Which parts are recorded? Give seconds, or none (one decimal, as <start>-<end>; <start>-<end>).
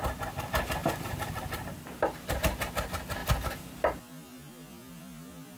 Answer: 0.0-0.8; 2.4-5.6